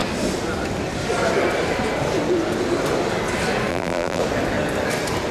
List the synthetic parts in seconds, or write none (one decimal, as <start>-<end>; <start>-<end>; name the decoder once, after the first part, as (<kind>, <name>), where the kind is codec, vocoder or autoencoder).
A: 3.7-4.2 (vocoder, BigVGAN v2)